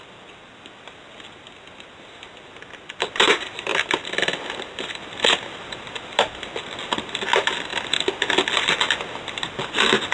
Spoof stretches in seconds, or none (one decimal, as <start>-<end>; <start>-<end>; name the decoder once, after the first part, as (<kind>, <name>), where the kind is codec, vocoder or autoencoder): none